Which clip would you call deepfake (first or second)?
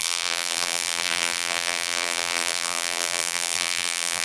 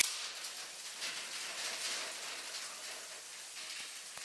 first